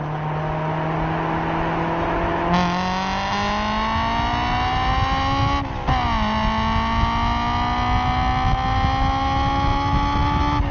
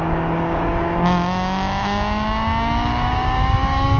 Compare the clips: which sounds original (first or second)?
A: first